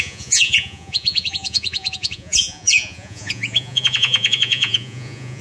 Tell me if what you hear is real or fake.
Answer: fake